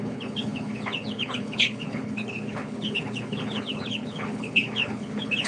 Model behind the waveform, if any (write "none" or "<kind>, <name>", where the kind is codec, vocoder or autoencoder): codec, HILCodec